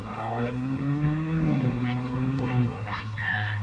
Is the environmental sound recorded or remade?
remade